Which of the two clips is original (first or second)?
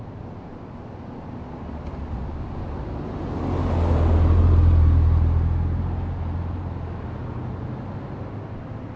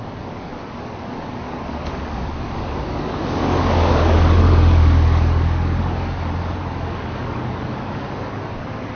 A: first